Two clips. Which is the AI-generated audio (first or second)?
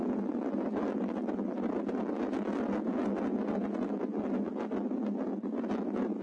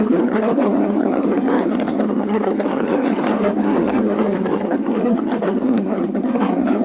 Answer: second